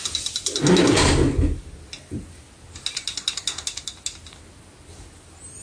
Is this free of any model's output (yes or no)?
yes